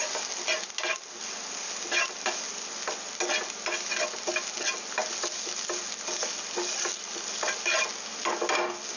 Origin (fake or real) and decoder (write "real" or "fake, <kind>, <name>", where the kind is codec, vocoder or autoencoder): real